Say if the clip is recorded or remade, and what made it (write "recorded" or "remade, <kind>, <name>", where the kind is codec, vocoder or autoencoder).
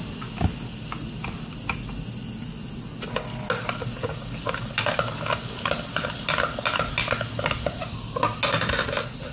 recorded